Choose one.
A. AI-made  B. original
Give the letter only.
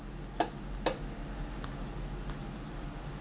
B